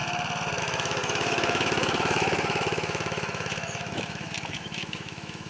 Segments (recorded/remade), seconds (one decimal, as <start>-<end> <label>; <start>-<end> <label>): 0.0-0.6 recorded; 0.6-5.5 remade